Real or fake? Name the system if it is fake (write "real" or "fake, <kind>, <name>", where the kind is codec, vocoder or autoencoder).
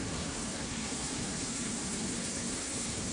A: fake, codec, SNAC